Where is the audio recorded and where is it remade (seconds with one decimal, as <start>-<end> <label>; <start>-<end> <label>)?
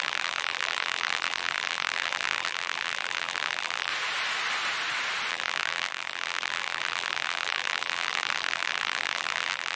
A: 0.0-3.9 remade; 3.9-5.3 recorded; 5.3-9.8 remade